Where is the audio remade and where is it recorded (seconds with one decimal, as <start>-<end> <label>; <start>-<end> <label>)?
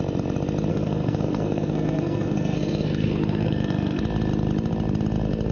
0.0-0.7 recorded; 0.7-4.0 remade; 4.0-5.5 recorded